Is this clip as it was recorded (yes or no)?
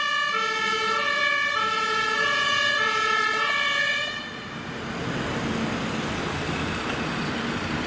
yes